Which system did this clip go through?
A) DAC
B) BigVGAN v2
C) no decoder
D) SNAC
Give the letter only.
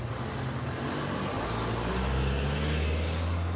C